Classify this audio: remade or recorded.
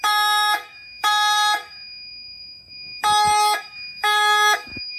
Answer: remade